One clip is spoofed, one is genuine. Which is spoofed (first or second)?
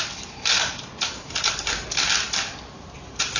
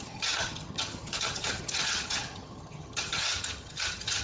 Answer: second